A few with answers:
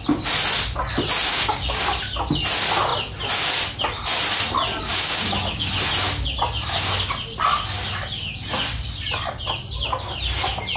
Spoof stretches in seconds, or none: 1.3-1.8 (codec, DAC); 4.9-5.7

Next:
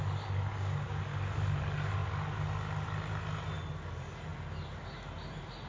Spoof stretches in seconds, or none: 0.5-1.0 (codec, DAC)

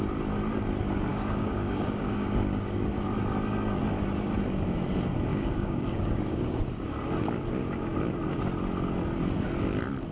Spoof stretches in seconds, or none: 1.1-2.9 (codec, DAC); 5.3-6.6

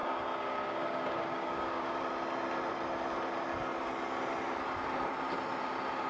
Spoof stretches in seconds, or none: 0.0-2.0 (codec, DAC)

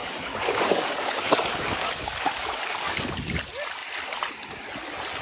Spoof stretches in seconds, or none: 0.0-3.1 (codec, DAC)

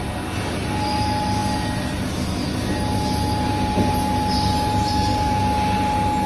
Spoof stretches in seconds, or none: 4.9-5.4 (codec, DAC)

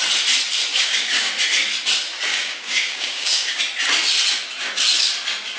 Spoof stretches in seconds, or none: 0.7-1.3 (codec, DAC); 2.3-3.6